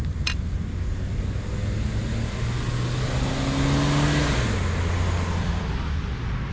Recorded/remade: recorded